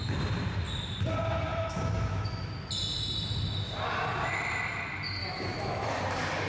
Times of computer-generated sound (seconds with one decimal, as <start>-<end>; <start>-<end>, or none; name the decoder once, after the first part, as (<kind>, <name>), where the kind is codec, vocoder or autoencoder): 1.5-2.5 (autoencoder, DAC-VAE); 5.2-5.9